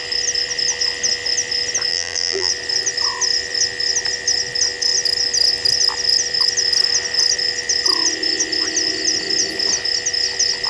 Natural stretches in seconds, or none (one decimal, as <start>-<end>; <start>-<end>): 0.0-1.9; 2.5-10.7